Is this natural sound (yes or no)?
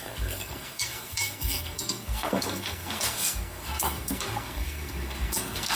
no